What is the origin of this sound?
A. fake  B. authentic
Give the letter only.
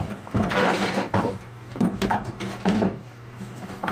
A